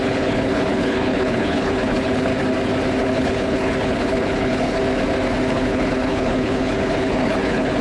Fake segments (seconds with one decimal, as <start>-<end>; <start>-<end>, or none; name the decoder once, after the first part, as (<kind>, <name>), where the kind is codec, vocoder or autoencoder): 0.0-2.3 (codec, HILCodec); 3.0-4.8; 5.5-7.8